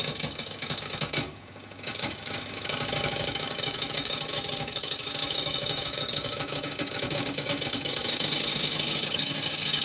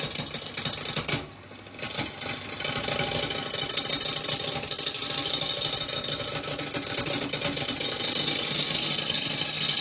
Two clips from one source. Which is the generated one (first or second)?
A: first